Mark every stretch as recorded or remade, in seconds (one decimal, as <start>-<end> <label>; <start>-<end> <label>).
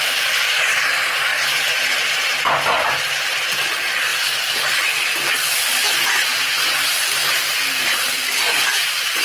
0.0-7.2 remade; 7.2-7.8 recorded; 7.8-9.2 remade